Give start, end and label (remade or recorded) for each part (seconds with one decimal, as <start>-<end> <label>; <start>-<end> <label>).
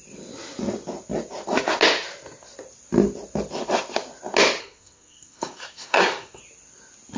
0.0-4.6 recorded; 4.6-6.4 remade; 6.4-7.2 recorded